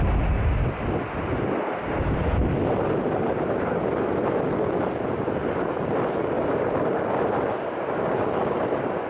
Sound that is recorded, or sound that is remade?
recorded